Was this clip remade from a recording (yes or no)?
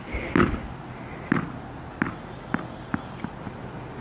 no